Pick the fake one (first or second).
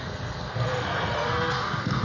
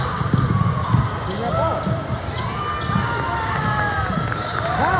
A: first